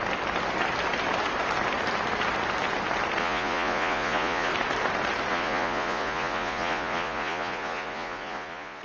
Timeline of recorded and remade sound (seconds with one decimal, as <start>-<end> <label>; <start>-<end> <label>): 0.0-3.2 recorded; 3.2-4.5 remade; 4.5-5.3 recorded; 5.3-8.8 remade